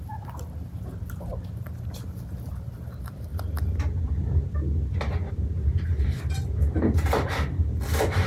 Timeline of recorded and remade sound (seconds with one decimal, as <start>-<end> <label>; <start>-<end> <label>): 0.0-3.3 remade; 3.3-5.3 recorded; 5.3-8.3 remade